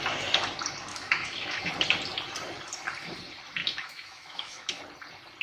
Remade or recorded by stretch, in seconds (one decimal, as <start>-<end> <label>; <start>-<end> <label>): 0.0-0.9 recorded; 0.9-1.7 remade; 1.7-3.6 recorded; 3.6-4.8 remade; 4.8-5.4 recorded